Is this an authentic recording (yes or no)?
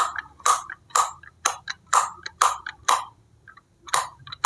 yes